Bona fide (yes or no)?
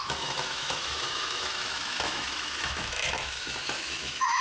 no